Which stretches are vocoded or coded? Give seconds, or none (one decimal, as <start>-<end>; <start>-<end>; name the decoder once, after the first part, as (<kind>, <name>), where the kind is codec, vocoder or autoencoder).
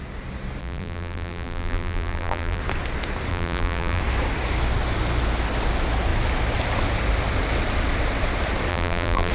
0.6-2.6 (vocoder, BigVGAN v2); 3.3-4.0; 8.7-9.3